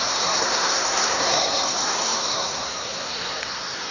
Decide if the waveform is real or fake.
fake